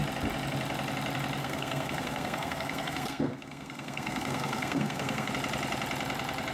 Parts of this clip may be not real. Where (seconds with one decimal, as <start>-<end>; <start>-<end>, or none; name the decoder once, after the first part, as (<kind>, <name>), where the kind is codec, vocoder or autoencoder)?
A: 1.4-5.3 (codec, SNAC)

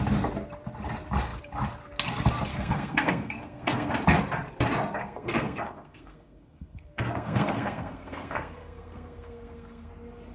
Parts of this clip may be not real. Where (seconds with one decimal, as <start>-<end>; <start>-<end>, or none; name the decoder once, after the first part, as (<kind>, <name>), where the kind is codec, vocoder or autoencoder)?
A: 2.5-3.9 (codec, SNAC); 5.0-9.9

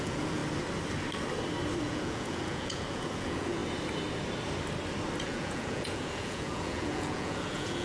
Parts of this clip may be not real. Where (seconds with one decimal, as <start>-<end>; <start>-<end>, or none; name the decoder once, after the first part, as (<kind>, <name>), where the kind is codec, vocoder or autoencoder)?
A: 0.0-0.4 (vocoder, Vocos); 1.8-3.6; 5.2-7.8

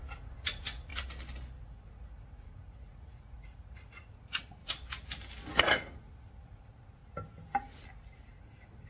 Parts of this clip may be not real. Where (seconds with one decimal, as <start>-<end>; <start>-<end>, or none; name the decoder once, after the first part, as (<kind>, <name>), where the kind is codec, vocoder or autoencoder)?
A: 0.0-0.9 (vocoder, Vocos); 1.6-4.6; 5.6-7.0; 8.4-8.9

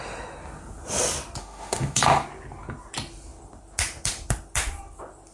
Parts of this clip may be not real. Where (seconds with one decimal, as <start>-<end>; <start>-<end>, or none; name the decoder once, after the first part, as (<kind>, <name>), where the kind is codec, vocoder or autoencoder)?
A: 1.4-2.0 (autoencoder, DAC-VAE)